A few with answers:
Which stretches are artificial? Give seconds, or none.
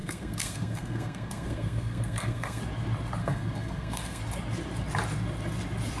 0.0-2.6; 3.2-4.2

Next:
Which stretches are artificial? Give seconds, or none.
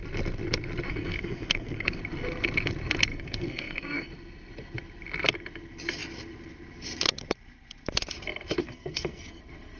0.9-2.0; 3.1-4.1; 8.6-9.4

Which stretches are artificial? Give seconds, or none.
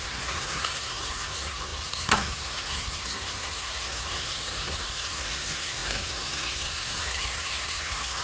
0.0-8.2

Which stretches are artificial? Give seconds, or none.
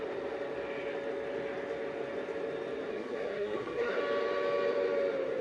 2.9-4.0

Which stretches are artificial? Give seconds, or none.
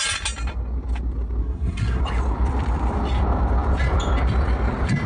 1.4-2.0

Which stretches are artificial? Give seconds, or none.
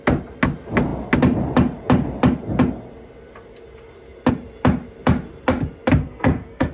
6.0-6.7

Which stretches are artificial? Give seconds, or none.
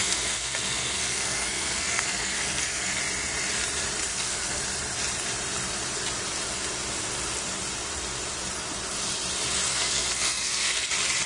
0.0-3.0; 4.1-4.6; 9.7-10.9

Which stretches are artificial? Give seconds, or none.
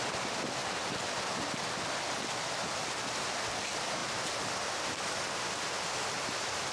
none